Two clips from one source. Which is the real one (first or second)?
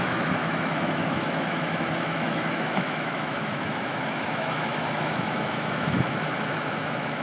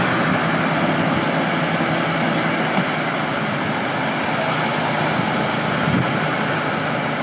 second